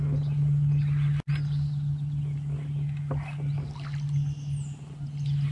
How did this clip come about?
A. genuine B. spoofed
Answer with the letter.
A